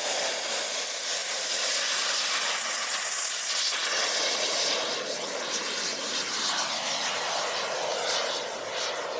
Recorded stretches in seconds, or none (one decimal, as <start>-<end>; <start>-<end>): 0.0-1.2; 1.8-9.2